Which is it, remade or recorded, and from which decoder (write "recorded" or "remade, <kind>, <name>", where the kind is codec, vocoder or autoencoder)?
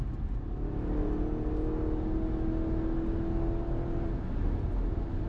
recorded